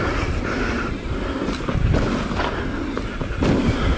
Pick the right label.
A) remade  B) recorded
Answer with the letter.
B